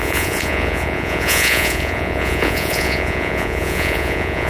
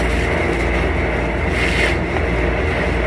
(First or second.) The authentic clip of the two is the second